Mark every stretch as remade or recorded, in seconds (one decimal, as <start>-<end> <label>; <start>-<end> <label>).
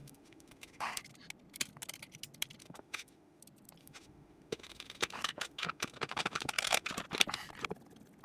0.0-1.0 remade; 1.0-2.6 recorded; 2.6-3.4 remade; 3.4-3.8 recorded; 3.8-6.9 remade; 6.9-8.2 recorded